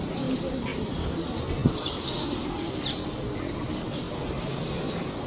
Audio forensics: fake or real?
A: real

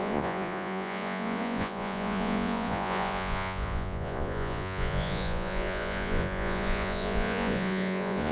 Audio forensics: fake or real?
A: fake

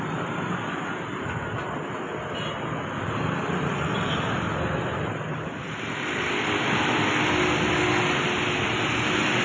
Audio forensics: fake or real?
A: real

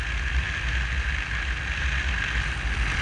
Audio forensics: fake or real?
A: real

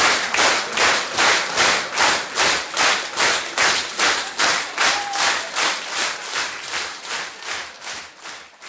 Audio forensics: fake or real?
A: real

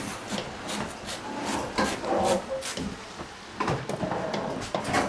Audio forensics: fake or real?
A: real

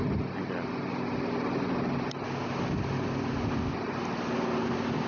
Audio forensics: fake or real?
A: real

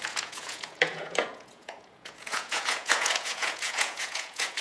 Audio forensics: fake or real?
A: fake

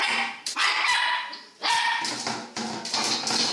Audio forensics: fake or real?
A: real